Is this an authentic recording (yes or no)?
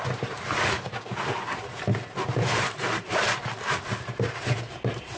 yes